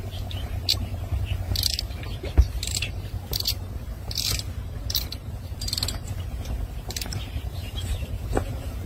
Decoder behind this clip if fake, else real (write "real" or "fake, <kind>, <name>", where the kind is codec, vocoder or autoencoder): fake, vocoder, BigVGAN v2